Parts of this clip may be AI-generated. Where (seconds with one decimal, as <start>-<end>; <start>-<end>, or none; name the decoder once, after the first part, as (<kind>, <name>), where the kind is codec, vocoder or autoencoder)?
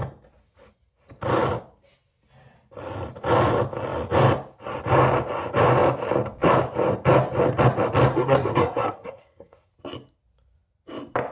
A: 8.1-9.7 (codec, SNAC)